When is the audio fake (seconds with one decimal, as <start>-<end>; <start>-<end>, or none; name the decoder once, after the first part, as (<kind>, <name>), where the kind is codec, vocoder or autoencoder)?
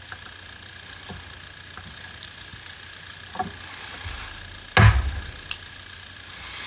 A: none